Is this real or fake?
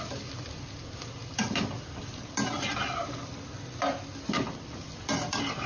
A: real